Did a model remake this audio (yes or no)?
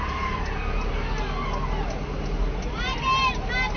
no